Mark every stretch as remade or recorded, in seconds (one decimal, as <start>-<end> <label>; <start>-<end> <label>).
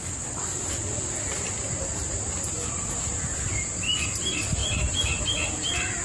0.0-4.6 recorded; 4.6-5.2 remade; 5.2-6.0 recorded